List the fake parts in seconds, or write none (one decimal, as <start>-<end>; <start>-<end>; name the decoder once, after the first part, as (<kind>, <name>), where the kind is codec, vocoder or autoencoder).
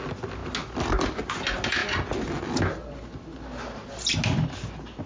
none